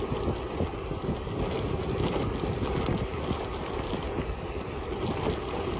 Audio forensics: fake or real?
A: real